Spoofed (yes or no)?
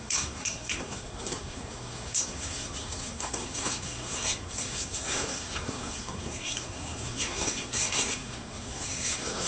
yes